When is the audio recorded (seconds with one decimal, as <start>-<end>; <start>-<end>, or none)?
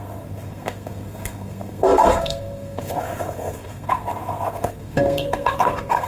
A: none